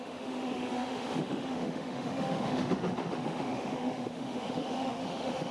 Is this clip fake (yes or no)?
yes